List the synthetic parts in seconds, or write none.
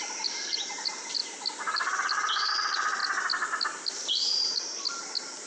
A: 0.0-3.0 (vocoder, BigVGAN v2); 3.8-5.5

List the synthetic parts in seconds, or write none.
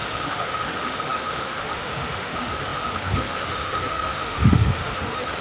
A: 0.0-5.4 (autoencoder, DAC-VAE)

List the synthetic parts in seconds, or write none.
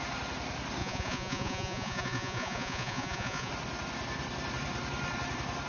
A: 0.8-3.5 (vocoder, Vocos)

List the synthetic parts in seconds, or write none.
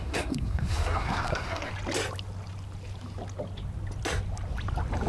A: 0.0-1.7 (codec, SNAC)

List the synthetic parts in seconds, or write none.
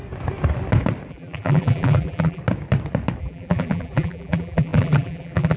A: 1.1-2.4 (vocoder, BigVGAN v2); 3.2-5.6